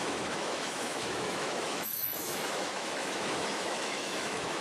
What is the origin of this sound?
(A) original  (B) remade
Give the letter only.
B